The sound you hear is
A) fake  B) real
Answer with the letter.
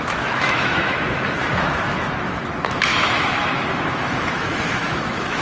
A